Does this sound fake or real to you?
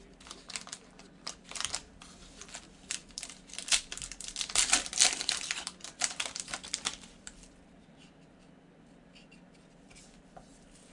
fake